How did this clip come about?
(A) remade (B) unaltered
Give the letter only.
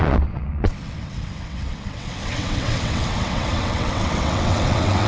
A